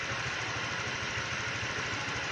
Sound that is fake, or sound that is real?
fake